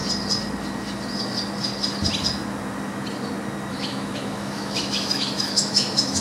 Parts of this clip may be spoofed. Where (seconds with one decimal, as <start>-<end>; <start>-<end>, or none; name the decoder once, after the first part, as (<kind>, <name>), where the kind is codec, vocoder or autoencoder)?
3.7-6.2 (autoencoder, DAC-VAE)